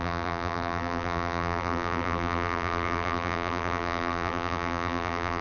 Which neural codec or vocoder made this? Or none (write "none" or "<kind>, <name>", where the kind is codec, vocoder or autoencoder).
vocoder, BigVGAN v2